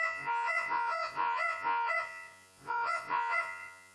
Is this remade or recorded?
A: remade